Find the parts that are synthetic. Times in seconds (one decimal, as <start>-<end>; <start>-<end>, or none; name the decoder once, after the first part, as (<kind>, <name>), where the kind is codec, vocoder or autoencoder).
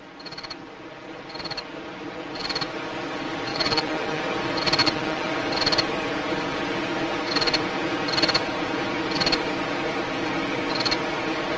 3.5-4.2 (vocoder, Vocos); 4.8-5.3